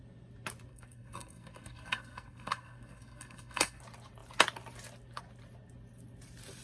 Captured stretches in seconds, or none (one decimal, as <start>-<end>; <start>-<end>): 0.0-0.7; 3.8-6.6